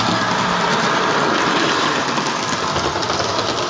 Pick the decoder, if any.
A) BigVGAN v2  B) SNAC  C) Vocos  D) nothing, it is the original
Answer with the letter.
D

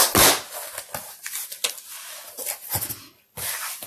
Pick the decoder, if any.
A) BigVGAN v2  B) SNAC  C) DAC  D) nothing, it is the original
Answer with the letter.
D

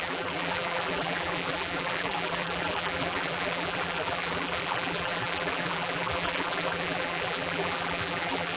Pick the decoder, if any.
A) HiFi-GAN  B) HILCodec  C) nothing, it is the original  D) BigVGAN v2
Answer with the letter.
D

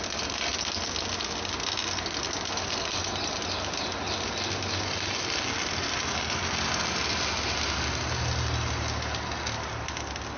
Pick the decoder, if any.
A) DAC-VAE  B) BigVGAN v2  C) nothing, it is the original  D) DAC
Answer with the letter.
C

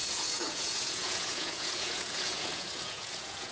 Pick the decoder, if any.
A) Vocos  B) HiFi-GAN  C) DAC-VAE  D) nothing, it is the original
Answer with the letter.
A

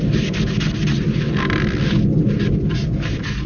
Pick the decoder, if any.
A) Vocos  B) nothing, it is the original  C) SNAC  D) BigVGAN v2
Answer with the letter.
B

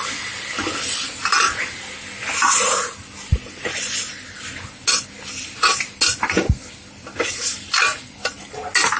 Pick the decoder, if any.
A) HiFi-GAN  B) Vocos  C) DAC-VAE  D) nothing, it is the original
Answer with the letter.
D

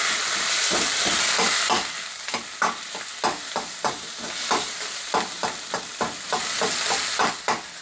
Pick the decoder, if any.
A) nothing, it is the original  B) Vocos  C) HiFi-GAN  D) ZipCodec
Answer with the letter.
A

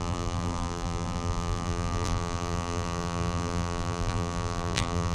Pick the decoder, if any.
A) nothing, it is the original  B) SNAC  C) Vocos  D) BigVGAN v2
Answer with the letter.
D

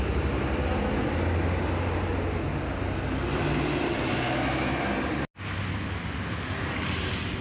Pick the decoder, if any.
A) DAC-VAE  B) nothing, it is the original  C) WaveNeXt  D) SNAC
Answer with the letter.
B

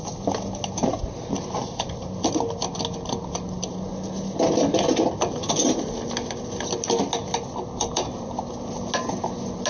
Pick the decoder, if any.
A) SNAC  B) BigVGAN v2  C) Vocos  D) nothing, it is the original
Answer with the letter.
D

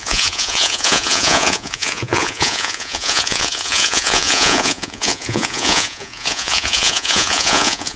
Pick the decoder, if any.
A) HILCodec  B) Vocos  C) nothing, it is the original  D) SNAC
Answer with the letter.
B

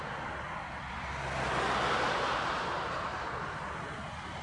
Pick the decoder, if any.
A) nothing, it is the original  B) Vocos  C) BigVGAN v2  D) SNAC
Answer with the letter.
A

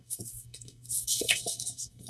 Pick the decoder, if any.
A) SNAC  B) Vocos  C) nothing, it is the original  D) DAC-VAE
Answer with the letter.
A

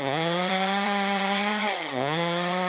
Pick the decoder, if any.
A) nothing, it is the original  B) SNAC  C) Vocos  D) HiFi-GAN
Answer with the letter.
D